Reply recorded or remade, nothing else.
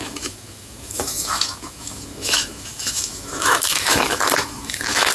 remade